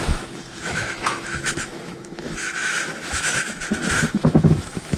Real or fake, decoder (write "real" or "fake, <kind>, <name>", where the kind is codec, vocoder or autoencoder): fake, autoencoder, DAC-VAE